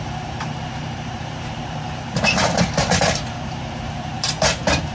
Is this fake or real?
fake